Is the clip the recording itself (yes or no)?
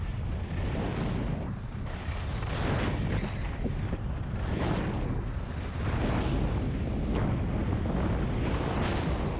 yes